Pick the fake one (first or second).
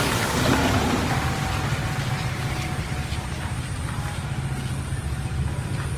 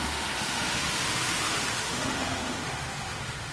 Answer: second